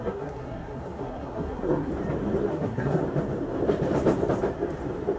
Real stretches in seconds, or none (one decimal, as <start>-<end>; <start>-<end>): 1.9-2.5; 3.0-5.2